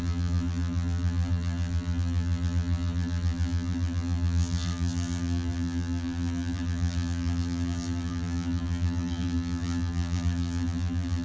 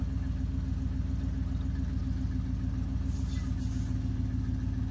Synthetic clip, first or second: first